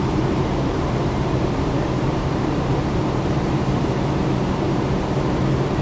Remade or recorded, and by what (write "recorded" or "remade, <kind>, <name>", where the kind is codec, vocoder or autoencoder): remade, vocoder, BigVGAN v2